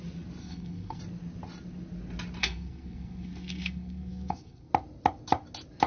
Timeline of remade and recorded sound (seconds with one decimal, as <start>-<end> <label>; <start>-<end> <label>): 0.0-0.4 recorded; 0.4-1.0 remade; 1.0-2.4 recorded; 2.4-4.7 remade; 4.7-5.9 recorded